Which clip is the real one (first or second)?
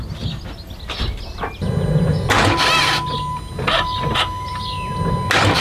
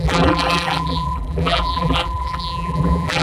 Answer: first